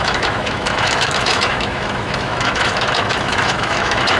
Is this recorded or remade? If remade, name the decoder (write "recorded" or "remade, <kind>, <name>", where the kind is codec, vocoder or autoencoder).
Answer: remade, autoencoder, DAC-VAE